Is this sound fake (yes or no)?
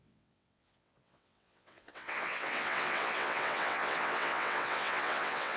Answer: yes